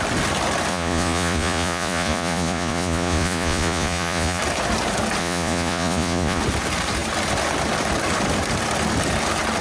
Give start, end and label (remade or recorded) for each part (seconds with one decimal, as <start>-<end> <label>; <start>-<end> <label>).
0.0-0.7 recorded; 0.7-4.4 remade; 4.4-5.2 recorded; 5.2-6.4 remade; 6.4-9.6 recorded

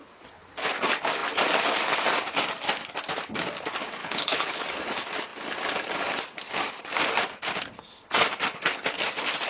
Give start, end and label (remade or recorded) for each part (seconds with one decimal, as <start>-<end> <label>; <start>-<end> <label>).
0.0-4.0 recorded; 4.0-4.6 remade; 4.6-9.5 recorded

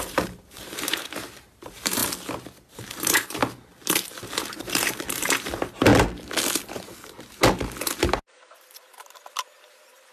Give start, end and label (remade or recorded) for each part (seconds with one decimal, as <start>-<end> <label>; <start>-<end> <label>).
0.0-2.0 remade; 2.0-2.7 recorded; 2.7-3.4 remade; 3.4-4.4 recorded; 4.4-5.9 remade; 5.9-8.0 recorded; 8.0-10.1 remade

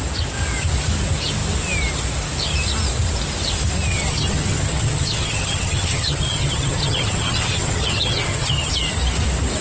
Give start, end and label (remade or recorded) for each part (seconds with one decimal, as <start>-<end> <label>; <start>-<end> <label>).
0.0-3.9 recorded; 3.9-8.7 remade; 8.7-9.6 recorded

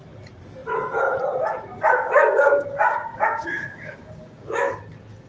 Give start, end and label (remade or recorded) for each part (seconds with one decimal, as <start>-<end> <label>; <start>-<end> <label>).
0.0-1.7 recorded; 1.7-4.7 remade; 4.7-5.3 recorded

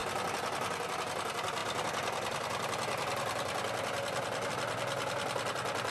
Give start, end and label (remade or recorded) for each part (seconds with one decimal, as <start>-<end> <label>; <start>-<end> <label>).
0.0-5.9 recorded